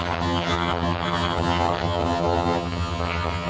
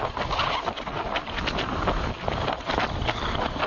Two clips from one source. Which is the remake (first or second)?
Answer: first